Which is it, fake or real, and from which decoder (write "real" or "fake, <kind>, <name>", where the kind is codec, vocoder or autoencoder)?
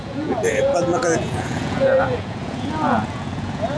fake, vocoder, Vocos